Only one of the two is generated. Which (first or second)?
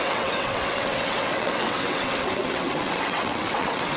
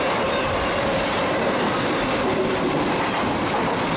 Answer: first